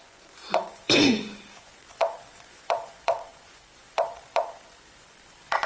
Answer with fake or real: fake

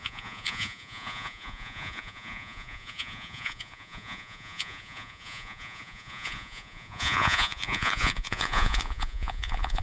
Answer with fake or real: fake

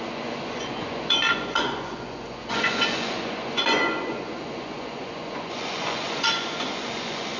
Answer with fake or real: fake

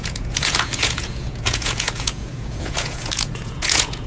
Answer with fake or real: fake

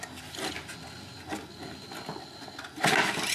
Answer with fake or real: real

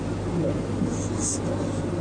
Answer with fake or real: real